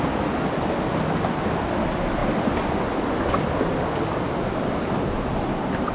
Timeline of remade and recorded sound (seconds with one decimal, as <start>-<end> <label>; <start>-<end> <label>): 0.0-5.9 recorded